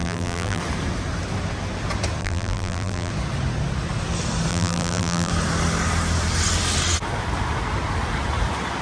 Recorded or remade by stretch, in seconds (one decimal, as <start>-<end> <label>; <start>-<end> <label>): 0.0-0.6 remade; 0.6-2.2 recorded; 2.2-3.1 remade; 3.1-4.5 recorded; 4.5-5.3 remade; 5.3-8.8 recorded